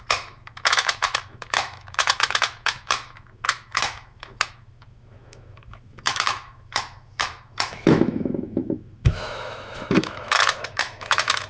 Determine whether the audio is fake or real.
fake